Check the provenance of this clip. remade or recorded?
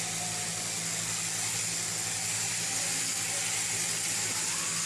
recorded